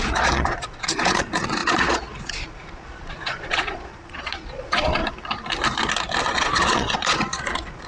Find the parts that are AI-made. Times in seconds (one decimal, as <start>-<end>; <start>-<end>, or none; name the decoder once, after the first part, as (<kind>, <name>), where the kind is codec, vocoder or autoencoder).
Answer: 0.0-5.0 (vocoder, Vocos); 6.2-7.9